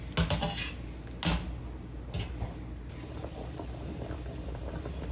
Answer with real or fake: real